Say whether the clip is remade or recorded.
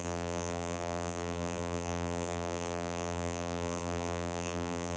remade